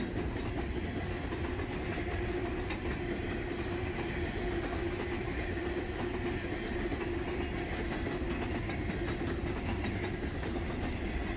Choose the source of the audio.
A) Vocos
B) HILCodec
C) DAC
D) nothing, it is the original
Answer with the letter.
D